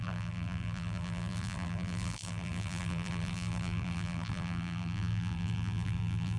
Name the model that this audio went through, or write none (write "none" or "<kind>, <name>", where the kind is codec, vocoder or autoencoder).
vocoder, BigVGAN v2